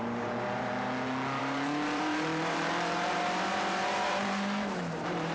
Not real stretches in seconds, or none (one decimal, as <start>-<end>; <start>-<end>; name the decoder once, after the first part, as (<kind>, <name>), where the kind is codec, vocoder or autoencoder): 0.0-0.7 (vocoder, BigVGAN v2); 1.4-5.3